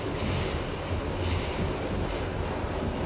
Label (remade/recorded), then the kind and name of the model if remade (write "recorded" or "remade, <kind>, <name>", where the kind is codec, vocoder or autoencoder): recorded